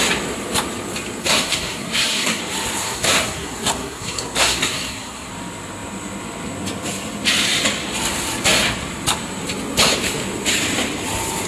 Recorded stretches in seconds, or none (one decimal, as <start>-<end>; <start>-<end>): 0.0-1.2; 2.4-2.8; 5.3-11.5